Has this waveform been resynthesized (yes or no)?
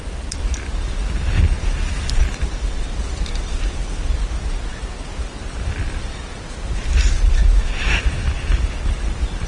no